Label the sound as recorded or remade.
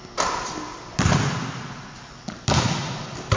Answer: remade